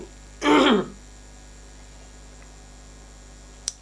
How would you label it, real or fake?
real